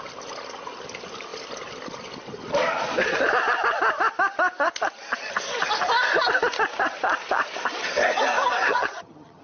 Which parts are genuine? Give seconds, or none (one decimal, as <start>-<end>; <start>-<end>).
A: 0.0-8.6